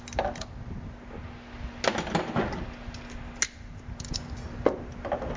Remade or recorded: recorded